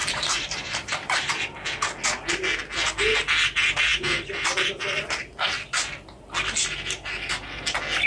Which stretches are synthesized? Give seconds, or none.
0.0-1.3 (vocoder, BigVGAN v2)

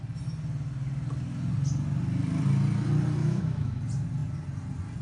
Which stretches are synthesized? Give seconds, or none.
3.2-3.8 (autoencoder, DAC-VAE)

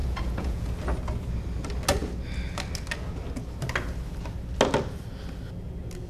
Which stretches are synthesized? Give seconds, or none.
0.0-0.7 (vocoder, Vocos)